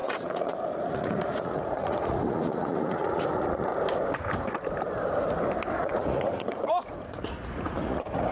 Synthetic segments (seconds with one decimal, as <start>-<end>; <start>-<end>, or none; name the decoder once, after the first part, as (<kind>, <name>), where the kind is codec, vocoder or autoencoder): 0.0-3.7 (vocoder, Vocos); 5.7-8.3

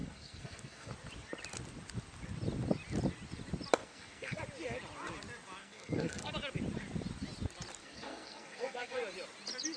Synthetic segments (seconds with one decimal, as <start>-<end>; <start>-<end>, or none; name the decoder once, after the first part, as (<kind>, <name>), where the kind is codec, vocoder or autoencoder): 0.0-0.9 (codec, SNAC); 3.8-4.4; 5.6-6.3; 7.8-9.0

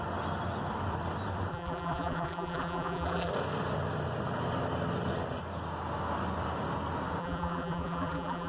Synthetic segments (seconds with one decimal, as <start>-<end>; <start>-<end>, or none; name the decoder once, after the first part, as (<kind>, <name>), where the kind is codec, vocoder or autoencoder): 1.5-3.3 (vocoder, BigVGAN v2); 7.2-8.5